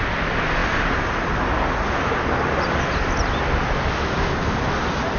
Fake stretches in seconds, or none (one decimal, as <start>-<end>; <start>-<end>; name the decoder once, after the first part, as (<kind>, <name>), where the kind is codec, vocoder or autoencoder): none